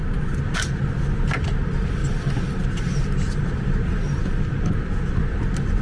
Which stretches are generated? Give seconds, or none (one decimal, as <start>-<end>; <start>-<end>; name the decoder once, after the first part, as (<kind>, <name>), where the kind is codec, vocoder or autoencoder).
0.0-0.8 (vocoder, BigVGAN v2); 2.0-5.3